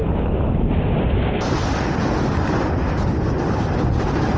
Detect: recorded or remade recorded